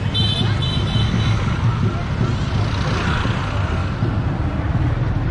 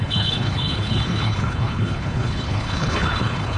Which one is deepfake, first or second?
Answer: second